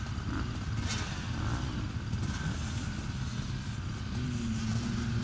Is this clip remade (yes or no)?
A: no